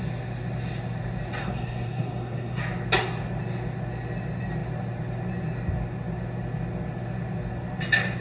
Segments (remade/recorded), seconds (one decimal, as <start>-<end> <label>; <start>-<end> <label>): 0.0-1.4 recorded; 1.4-2.6 remade; 2.6-8.2 recorded